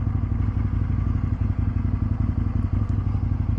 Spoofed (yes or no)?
no